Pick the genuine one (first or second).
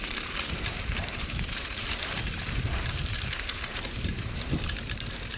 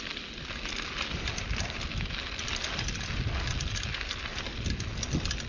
second